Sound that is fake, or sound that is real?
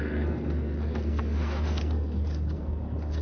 fake